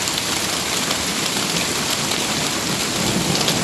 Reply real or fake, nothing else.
real